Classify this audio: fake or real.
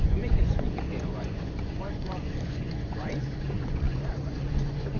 fake